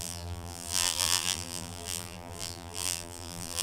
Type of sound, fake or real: fake